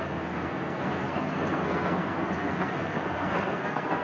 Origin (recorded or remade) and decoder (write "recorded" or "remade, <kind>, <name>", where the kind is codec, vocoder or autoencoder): remade, codec, SNAC